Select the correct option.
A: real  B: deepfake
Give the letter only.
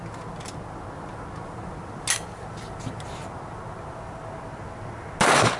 A